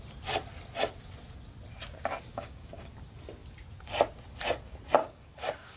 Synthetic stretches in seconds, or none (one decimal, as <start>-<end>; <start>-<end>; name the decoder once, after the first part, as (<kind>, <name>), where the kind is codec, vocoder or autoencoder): 2.3-2.9 (codec, DAC); 5.0-5.8